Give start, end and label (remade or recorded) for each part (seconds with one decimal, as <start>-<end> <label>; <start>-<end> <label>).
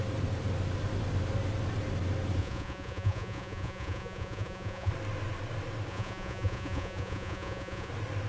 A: 0.0-2.4 recorded; 2.4-4.9 remade; 4.9-5.9 recorded; 5.9-7.9 remade; 7.9-8.3 recorded